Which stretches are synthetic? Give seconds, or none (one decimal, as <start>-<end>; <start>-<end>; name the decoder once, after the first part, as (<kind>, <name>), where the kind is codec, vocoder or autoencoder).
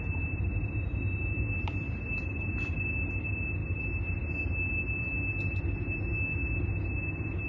none